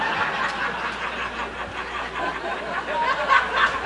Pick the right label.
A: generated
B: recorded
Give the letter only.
B